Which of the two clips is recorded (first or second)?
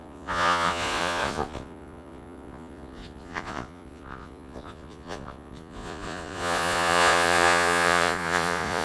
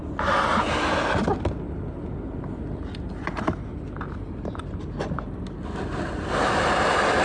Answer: second